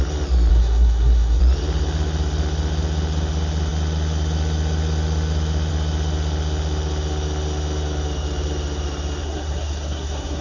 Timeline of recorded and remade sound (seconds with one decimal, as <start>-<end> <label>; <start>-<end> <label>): 0.0-0.5 recorded; 0.5-1.4 remade; 1.4-9.2 recorded; 9.2-10.4 remade